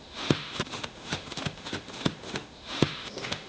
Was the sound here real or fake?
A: fake